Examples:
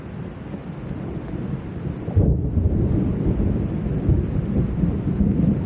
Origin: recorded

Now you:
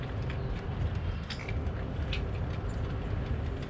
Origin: recorded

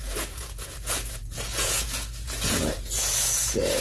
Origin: remade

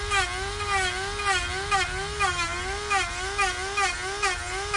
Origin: recorded